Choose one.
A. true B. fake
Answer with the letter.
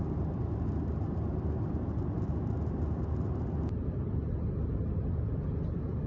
A